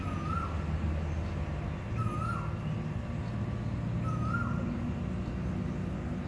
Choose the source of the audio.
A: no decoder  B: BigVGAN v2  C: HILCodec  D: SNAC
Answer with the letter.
A